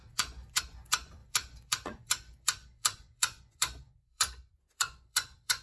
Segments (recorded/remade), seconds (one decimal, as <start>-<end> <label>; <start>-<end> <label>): 0.0-5.6 remade